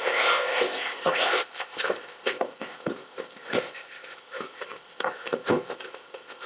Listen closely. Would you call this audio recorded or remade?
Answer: remade